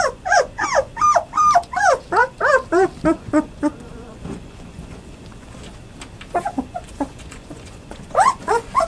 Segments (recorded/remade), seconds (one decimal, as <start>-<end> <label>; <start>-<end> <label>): 0.0-0.9 remade; 0.9-1.6 recorded; 1.6-2.2 remade; 2.2-3.2 recorded; 3.2-5.7 remade; 5.7-6.5 recorded; 6.5-8.9 remade